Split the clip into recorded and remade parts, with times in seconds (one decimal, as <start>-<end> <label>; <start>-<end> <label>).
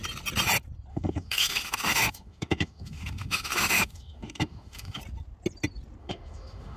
0.0-0.9 recorded; 0.9-5.0 remade; 5.0-6.0 recorded; 6.0-6.8 remade